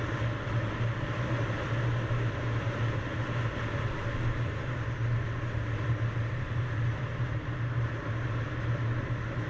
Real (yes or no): yes